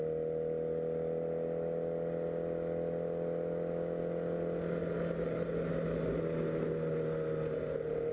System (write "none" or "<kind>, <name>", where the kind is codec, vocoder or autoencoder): none